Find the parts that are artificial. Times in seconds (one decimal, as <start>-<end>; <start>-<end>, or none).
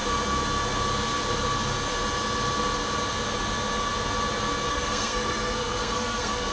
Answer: 4.7-6.5